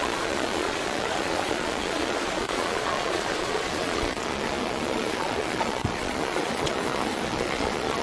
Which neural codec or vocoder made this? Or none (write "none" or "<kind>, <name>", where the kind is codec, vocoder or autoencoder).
vocoder, Vocos